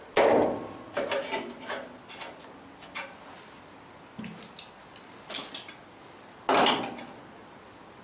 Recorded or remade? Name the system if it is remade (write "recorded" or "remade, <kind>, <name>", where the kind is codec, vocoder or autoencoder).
recorded